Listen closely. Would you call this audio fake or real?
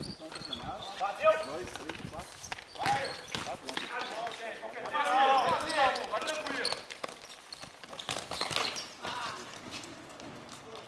real